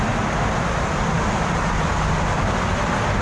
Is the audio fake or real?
real